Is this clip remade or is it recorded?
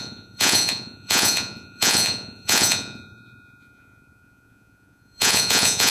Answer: remade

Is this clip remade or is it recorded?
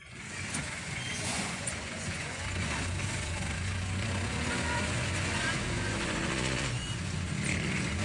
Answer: remade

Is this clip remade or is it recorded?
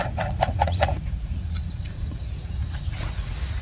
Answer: remade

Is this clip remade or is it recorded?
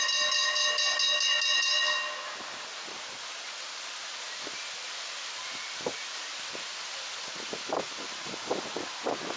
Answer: recorded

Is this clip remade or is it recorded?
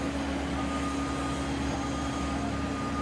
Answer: recorded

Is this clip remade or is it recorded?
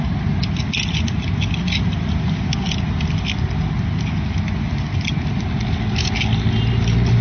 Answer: recorded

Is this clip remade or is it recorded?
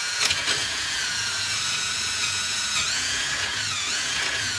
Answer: remade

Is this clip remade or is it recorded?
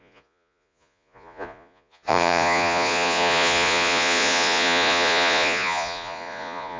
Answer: remade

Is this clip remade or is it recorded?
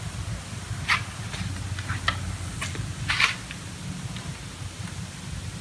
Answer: recorded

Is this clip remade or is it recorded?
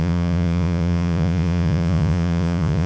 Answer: remade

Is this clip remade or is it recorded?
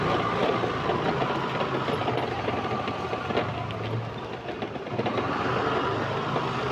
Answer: recorded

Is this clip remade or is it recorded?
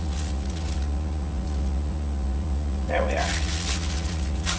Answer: remade